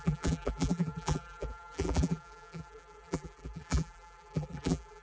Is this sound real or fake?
fake